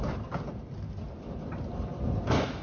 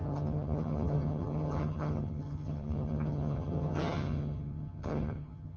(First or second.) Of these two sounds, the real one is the first